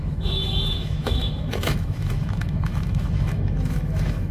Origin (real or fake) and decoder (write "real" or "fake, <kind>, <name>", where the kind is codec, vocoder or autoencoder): fake, autoencoder, DAC-VAE